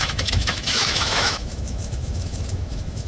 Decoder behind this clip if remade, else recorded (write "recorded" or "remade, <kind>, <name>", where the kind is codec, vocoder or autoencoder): remade, autoencoder, DAC-VAE